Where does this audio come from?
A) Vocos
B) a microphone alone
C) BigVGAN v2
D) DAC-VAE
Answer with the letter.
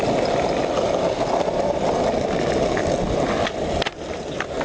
B